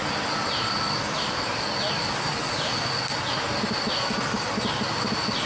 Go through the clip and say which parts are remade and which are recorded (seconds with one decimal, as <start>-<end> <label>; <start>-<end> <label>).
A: 0.0-5.5 recorded